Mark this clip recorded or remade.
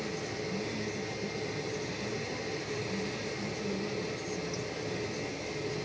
recorded